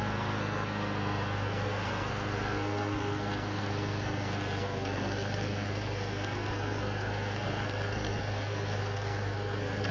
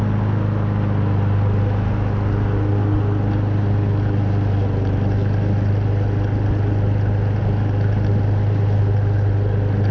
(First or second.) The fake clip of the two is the first